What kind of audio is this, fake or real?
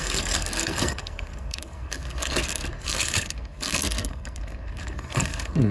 fake